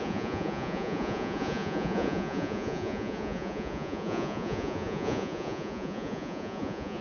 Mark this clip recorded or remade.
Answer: remade